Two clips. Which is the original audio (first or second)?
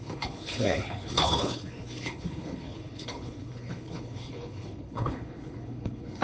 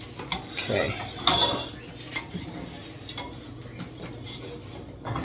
second